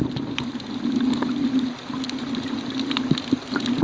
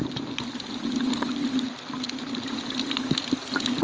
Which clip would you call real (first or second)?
first